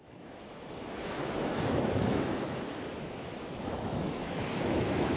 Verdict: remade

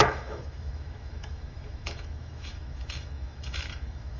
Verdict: remade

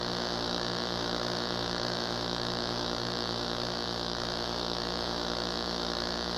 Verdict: remade